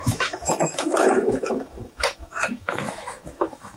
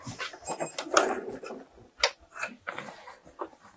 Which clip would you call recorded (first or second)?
second